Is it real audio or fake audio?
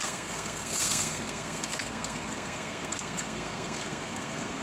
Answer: fake